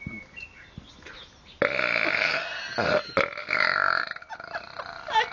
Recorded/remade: recorded